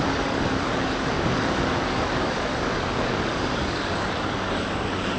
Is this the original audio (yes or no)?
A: no